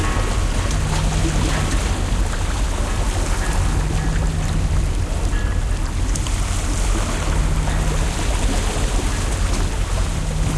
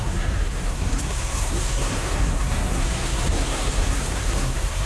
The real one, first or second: first